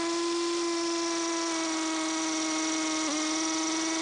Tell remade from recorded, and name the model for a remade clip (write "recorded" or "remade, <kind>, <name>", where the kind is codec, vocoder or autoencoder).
recorded